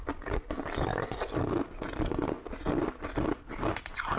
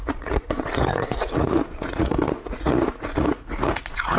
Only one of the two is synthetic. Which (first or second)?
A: second